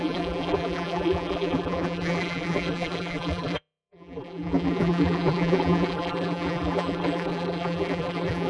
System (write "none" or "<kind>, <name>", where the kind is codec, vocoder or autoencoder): vocoder, BigVGAN v2